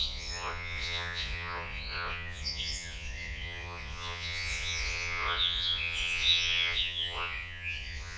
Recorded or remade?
remade